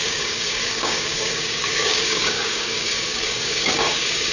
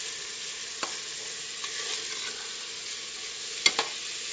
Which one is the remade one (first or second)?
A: first